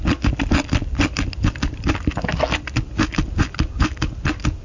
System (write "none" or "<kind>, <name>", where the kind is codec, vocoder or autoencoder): none